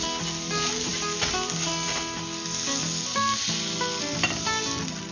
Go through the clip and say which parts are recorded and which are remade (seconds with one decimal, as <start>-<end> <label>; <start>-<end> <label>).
0.0-5.1 recorded